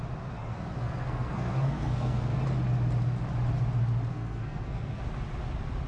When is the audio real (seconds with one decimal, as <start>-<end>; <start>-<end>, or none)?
0.0-0.4; 2.4-4.1; 5.0-5.9